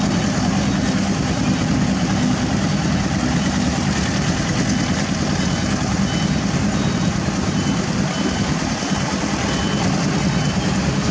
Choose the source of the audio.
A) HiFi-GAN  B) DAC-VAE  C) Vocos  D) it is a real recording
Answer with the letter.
D